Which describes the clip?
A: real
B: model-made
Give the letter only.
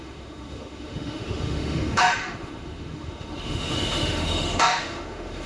B